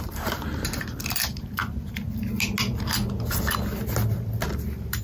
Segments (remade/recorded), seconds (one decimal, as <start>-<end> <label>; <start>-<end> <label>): 0.0-1.6 remade; 1.6-4.1 recorded; 4.1-5.0 remade